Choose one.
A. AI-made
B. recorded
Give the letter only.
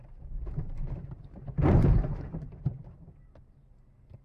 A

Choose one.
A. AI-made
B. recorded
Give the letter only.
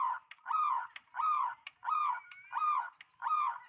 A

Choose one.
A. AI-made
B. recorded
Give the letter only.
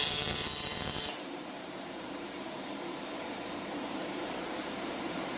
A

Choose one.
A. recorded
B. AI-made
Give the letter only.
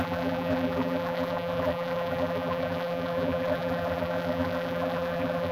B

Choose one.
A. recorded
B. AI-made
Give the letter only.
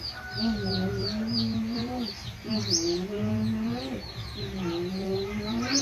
B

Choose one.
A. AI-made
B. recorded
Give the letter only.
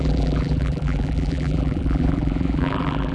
A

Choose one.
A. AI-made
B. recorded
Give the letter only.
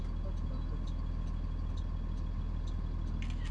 B